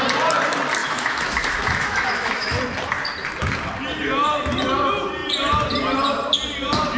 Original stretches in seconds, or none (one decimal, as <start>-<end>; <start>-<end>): 0.0-0.8; 2.6-7.0